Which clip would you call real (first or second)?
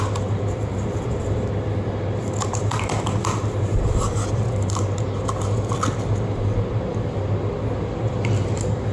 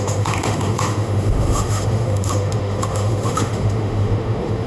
first